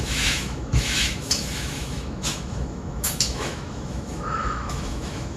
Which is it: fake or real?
fake